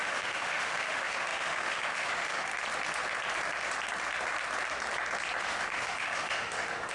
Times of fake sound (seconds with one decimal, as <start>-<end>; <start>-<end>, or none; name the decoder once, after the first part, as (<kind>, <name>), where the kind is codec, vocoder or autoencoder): 0.0-2.5 (autoencoder, DAC-VAE); 5.4-6.9